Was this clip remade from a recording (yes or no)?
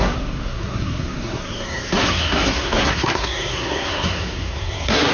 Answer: yes